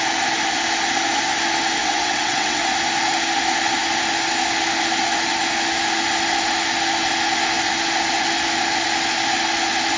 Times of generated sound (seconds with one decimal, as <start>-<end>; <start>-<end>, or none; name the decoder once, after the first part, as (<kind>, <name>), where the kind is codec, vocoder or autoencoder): 1.8-2.6 (vocoder, WaveNeXt)